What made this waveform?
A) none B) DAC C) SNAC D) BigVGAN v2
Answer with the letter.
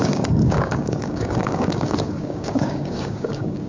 B